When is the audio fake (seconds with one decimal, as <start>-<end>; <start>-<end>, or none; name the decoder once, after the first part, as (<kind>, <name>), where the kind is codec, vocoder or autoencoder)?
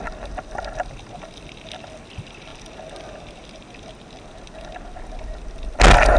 none